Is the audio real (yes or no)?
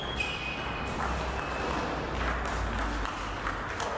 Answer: yes